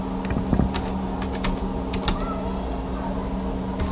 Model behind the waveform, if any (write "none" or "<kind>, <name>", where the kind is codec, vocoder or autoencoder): none